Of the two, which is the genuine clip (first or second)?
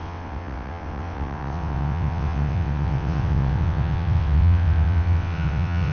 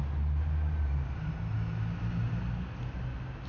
second